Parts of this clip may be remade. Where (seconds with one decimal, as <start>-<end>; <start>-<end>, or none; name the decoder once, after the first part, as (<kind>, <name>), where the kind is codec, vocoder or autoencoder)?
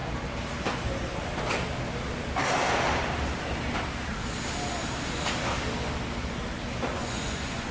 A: 6.9-7.7 (vocoder, Vocos)